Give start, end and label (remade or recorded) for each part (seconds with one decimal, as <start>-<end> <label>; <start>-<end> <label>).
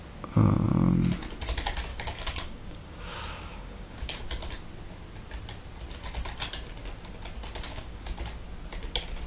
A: 0.0-1.9 recorded; 1.9-4.2 remade; 4.2-7.7 recorded; 7.7-8.2 remade; 8.2-9.3 recorded